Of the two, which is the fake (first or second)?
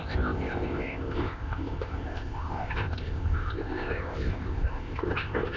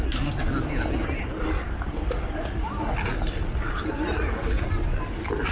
first